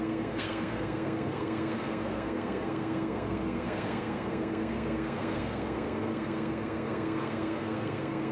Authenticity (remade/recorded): remade